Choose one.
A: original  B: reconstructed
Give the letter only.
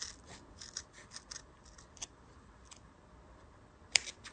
B